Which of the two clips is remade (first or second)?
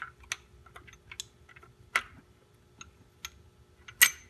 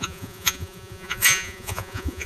second